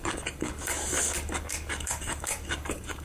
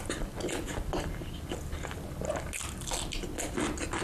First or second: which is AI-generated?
first